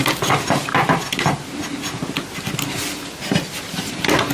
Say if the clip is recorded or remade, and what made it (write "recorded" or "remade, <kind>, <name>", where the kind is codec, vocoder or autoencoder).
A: recorded